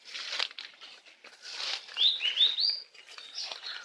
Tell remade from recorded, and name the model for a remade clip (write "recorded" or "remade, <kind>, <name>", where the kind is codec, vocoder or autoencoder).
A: recorded